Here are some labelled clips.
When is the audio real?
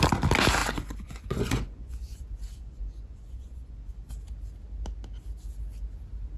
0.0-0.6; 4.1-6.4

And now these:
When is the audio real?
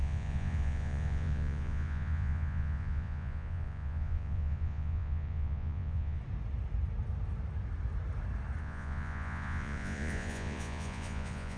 6.2-8.6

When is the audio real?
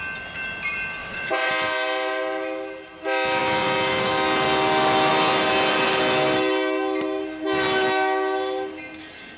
0.0-1.0; 1.5-9.4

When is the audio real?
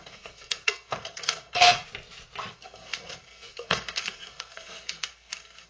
1.8-2.5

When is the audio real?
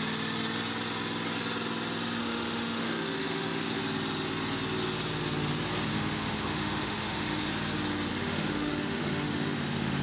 0.0-2.2; 3.8-5.9; 7.5-8.1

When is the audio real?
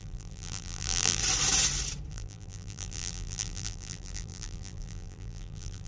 1.2-2.1